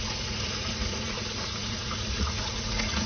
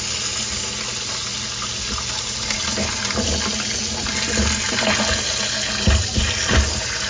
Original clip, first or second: second